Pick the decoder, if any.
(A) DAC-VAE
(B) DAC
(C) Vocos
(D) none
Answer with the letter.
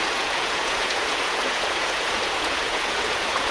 C